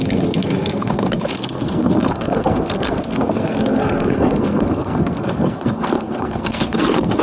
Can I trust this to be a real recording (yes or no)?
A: no